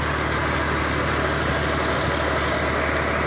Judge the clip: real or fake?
real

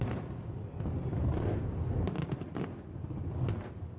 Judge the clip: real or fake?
real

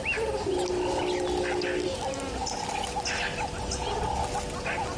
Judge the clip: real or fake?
real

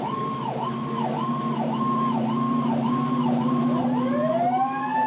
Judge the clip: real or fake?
fake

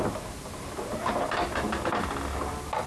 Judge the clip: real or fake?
real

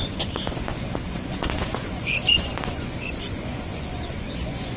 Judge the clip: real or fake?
fake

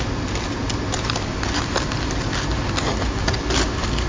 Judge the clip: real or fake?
real